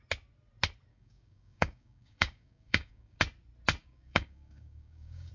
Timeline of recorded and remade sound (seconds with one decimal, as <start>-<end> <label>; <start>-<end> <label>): 0.0-0.9 recorded; 0.9-3.2 remade; 3.2-3.8 recorded; 3.8-5.3 remade